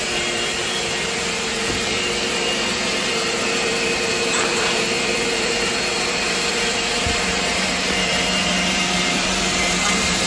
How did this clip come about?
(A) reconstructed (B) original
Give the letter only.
A